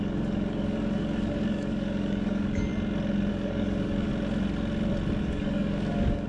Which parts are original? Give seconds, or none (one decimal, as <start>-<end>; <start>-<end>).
2.7-3.3; 4.1-5.2